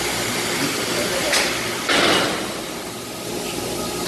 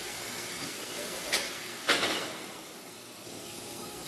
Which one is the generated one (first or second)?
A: second